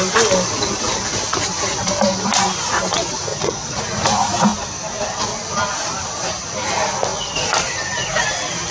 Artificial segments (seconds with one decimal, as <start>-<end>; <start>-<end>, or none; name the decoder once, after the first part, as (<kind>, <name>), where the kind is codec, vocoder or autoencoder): 3.3-3.8 (vocoder, Vocos)